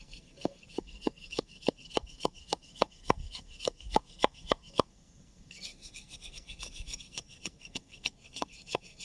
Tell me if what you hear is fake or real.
fake